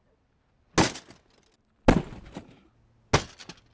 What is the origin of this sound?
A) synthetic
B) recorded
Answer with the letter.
B